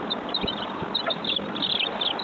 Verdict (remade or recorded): recorded